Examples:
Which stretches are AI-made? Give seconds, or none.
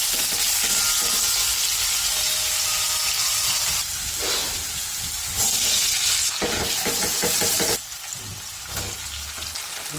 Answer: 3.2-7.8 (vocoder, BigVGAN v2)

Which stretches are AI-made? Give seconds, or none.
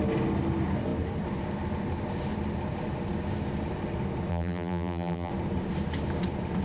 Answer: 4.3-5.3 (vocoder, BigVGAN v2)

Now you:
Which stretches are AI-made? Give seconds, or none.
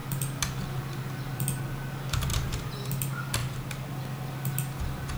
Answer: 2.3-2.9 (vocoder, BigVGAN v2)